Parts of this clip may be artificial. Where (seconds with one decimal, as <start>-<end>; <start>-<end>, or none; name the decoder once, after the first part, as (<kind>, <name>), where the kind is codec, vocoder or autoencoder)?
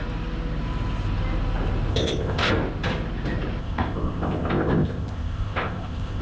1.9-2.5 (codec, ZipCodec); 3.6-6.2